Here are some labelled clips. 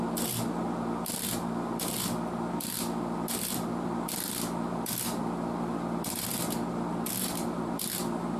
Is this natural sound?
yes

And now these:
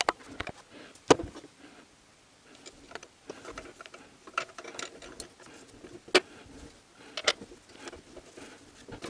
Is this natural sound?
yes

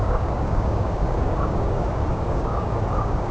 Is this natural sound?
no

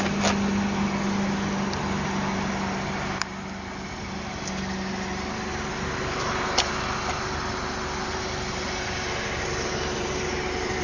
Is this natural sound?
yes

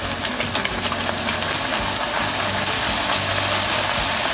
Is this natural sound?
yes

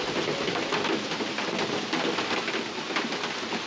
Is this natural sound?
yes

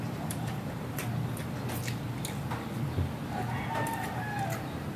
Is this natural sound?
yes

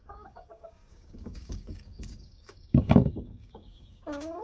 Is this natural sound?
no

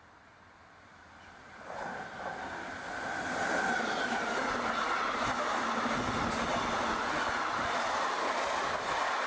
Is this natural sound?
yes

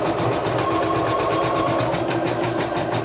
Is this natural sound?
yes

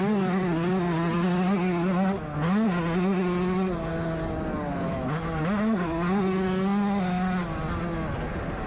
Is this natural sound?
yes